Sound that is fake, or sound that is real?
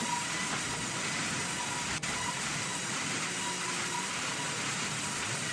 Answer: real